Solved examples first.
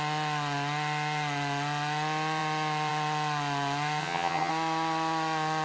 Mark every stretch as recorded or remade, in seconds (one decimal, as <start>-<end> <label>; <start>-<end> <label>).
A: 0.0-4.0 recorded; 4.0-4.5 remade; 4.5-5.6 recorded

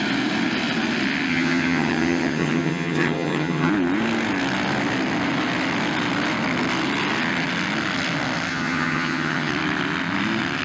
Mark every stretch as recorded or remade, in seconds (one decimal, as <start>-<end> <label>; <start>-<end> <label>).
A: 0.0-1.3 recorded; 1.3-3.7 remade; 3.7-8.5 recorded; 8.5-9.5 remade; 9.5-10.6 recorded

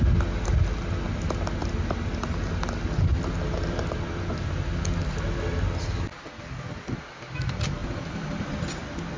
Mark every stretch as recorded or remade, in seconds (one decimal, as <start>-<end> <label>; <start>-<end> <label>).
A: 0.0-9.2 recorded

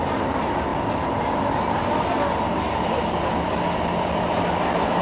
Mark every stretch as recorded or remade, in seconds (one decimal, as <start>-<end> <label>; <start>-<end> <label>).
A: 0.0-5.0 recorded

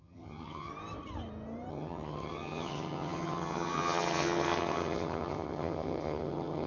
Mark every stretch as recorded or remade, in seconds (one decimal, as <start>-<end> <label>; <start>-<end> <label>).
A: 0.0-0.7 remade; 0.7-1.7 recorded; 1.7-6.7 remade

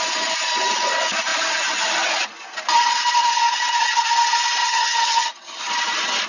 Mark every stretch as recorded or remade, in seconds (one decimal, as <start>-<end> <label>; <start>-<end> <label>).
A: 0.0-4.6 recorded; 4.6-5.7 remade; 5.7-6.3 recorded